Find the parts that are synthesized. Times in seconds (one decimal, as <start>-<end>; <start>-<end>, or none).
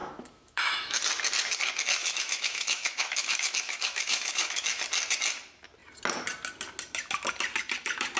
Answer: 0.0-1.0; 2.0-4.8